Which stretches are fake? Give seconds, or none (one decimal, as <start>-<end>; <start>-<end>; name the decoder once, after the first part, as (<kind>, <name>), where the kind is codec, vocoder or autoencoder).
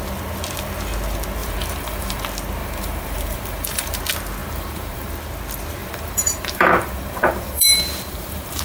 1.4-2.2 (vocoder, BigVGAN v2); 2.6-4.0; 4.4-5.1; 5.8-8.6